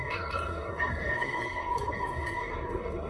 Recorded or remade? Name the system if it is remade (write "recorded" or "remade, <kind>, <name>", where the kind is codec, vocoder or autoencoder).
remade, codec, SNAC